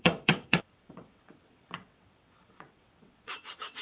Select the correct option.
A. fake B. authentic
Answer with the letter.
A